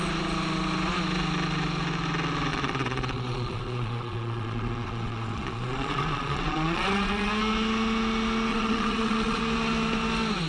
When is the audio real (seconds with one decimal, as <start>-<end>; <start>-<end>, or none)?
0.0-2.5; 7.3-8.5; 9.4-10.5